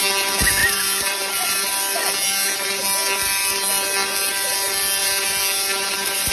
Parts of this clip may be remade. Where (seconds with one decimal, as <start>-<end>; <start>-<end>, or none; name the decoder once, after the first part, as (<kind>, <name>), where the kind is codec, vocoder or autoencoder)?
0.6-1.7 (vocoder, BigVGAN v2); 5.0-6.3